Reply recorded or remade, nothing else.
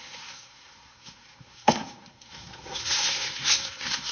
remade